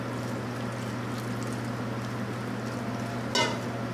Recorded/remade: recorded